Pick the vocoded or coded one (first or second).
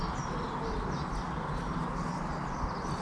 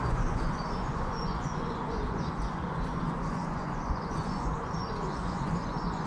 second